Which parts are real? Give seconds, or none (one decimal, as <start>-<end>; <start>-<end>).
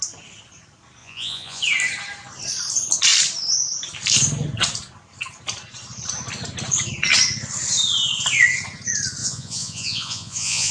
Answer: 0.0-1.0; 1.6-9.2